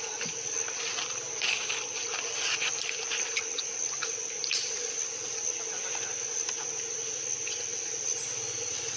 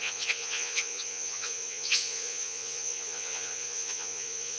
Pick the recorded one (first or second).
first